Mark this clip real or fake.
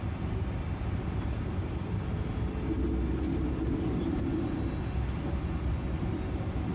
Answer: real